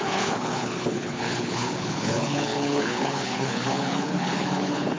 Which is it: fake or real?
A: fake